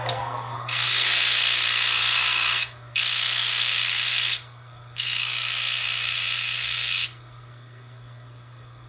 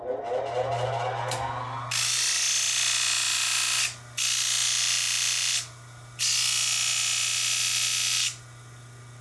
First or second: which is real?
second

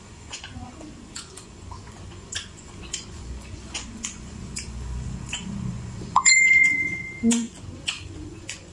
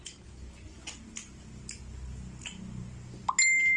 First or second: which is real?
second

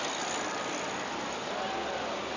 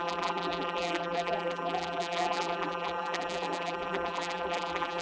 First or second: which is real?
first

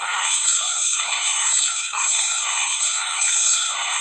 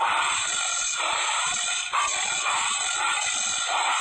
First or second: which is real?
second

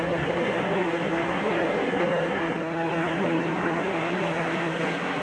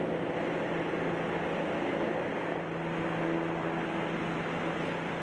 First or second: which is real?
second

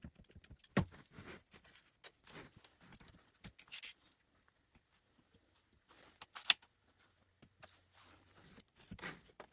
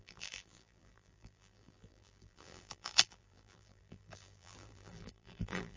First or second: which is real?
first